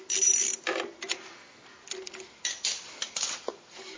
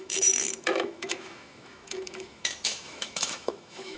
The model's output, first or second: second